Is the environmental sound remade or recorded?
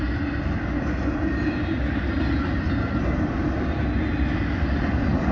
recorded